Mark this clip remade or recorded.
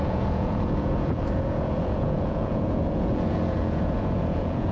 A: remade